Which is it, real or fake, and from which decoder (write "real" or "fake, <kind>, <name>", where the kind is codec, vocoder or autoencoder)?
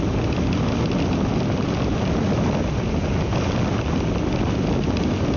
real